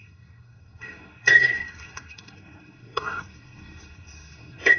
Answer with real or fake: fake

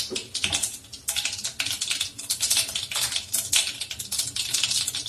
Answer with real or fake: real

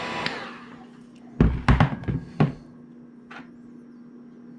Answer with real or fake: real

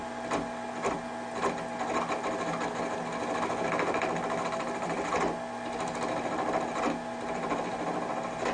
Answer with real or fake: real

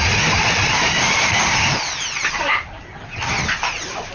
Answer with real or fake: real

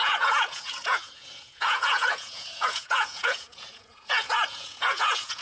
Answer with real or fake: fake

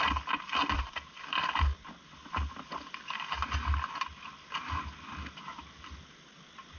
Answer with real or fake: real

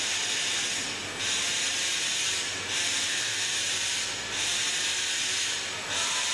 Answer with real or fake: real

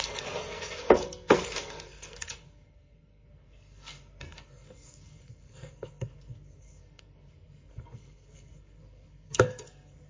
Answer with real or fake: fake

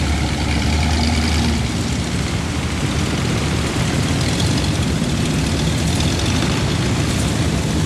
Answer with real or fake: real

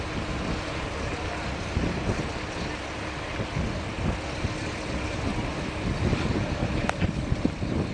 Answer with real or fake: real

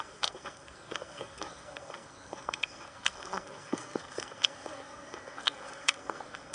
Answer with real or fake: fake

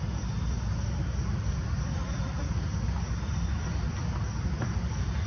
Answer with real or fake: real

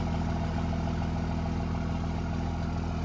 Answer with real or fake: real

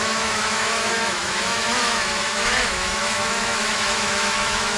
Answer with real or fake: fake